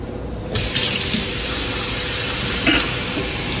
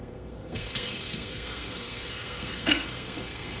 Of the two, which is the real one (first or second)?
first